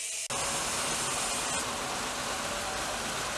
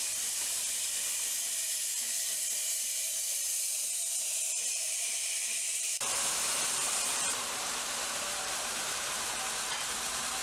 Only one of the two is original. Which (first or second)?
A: first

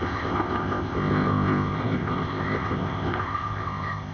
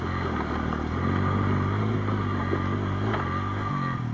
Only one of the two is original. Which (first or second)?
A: second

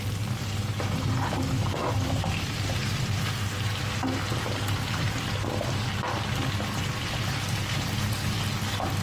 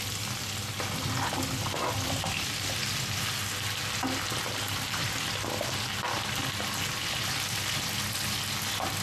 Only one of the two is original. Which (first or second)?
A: second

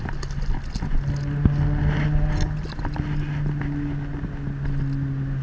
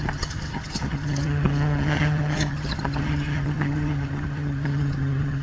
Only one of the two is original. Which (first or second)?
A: first